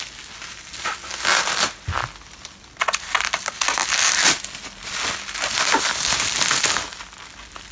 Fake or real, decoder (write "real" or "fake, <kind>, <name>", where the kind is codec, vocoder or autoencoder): real